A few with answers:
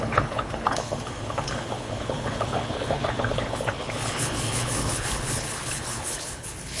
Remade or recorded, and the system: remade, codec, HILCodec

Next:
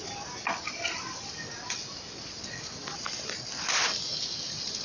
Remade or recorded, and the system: recorded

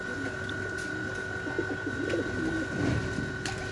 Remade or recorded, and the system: recorded